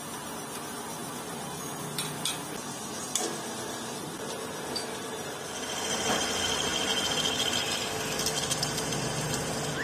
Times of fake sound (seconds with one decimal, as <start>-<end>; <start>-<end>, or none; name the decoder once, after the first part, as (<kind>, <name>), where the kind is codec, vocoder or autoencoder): none